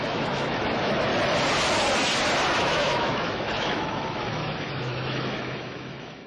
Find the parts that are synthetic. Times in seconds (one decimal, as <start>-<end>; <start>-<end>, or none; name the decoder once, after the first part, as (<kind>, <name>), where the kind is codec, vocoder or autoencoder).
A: 0.0-1.1 (autoencoder, DAC-VAE); 2.6-6.3

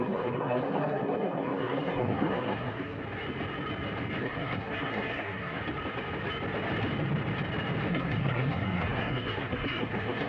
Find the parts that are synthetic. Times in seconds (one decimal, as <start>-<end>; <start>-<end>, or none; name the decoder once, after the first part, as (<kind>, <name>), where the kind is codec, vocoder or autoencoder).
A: 0.0-3.0 (codec, SNAC); 4.2-5.6; 7.9-10.3

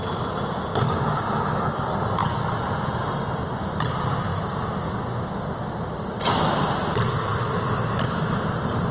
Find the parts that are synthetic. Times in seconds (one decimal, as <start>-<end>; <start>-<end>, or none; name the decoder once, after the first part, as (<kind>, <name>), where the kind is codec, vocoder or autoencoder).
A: 0.7-1.8 (codec, DAC); 2.2-2.7

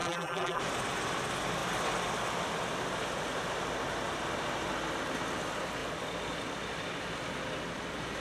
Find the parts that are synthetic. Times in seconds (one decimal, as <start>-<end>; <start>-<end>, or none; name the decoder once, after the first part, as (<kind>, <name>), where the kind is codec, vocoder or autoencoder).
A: 0.0-0.6 (vocoder, BigVGAN v2)

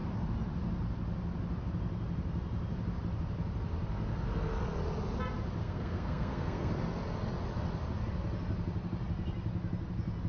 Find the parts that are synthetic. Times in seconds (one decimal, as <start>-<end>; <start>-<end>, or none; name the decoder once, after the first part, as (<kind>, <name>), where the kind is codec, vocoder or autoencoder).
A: 5.6-6.7 (codec, SNAC)

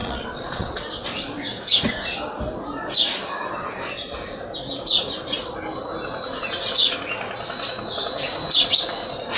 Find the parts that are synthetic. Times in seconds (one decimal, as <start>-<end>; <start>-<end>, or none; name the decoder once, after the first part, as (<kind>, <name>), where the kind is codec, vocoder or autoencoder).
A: 0.0-1.3 (vocoder, Vocos)

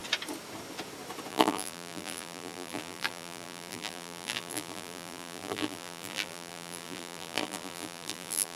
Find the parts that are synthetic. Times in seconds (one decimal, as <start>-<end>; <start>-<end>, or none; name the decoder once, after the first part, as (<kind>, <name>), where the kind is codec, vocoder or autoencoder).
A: 1.3-8.6 (vocoder, BigVGAN v2)

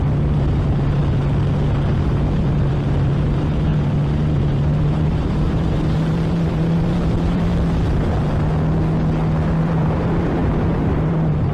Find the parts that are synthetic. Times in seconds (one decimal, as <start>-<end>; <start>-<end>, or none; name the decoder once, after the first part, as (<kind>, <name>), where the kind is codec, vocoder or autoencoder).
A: 0.0-1.0 (vocoder, BigVGAN v2); 1.9-7.5; 9.6-11.5